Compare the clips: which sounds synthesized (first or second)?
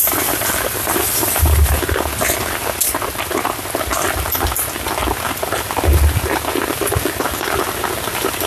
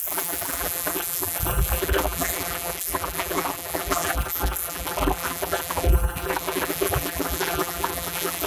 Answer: second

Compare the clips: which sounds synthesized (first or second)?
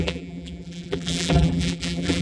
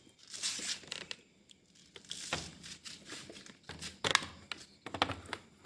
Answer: first